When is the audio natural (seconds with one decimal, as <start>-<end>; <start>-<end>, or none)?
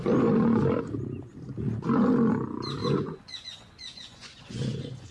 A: 0.0-2.8